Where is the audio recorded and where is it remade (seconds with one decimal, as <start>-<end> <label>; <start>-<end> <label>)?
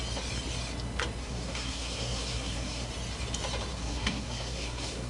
0.0-1.2 recorded; 1.2-2.9 remade; 2.9-3.7 recorded; 3.7-5.1 remade